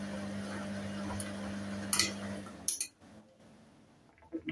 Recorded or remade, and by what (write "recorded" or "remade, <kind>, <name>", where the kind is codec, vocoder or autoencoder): recorded